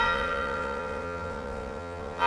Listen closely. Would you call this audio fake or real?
fake